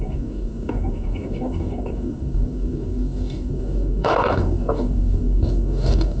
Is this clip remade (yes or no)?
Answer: yes